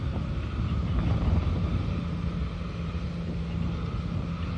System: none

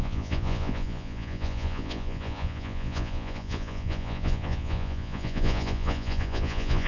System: vocoder, Vocos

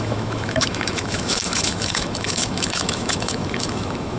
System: autoencoder, DAC-VAE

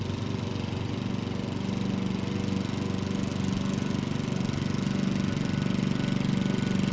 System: none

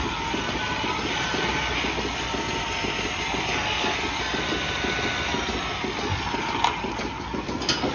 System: none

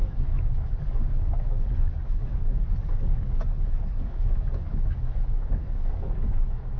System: codec, DAC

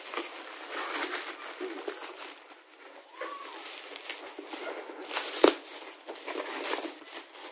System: none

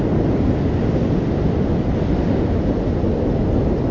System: none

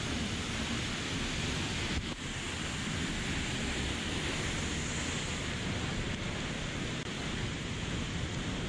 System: none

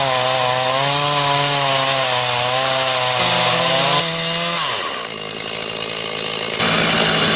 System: none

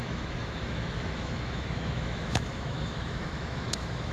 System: autoencoder, DAC-VAE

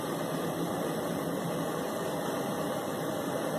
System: vocoder, BigVGAN v2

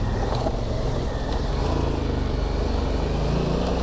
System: none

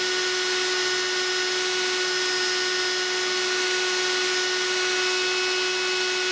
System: none